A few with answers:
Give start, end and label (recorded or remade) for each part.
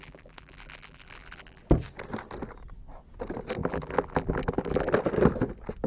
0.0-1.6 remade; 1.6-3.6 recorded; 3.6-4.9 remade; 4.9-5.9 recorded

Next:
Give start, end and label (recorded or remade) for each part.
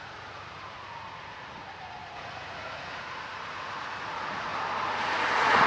0.0-4.5 remade; 4.5-5.0 recorded; 5.0-5.7 remade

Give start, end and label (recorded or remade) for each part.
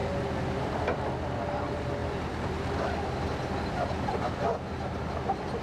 0.0-5.6 recorded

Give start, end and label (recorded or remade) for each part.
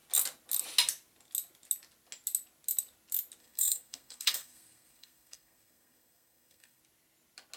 0.0-3.4 recorded; 3.4-6.8 remade; 6.8-7.6 recorded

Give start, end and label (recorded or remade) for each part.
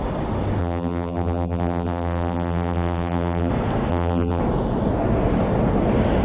0.0-0.6 recorded; 0.6-3.5 remade; 3.5-3.9 recorded; 3.9-4.4 remade; 4.4-6.2 recorded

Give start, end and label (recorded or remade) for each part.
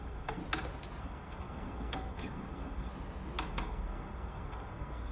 0.0-0.4 remade; 0.4-1.0 recorded; 1.0-2.9 remade; 2.9-3.5 recorded; 3.5-5.1 remade